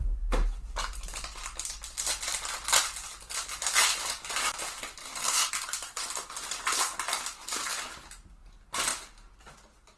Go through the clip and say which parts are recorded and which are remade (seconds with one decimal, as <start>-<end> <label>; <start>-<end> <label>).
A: 0.0-5.0 recorded; 5.0-5.5 remade; 5.5-10.0 recorded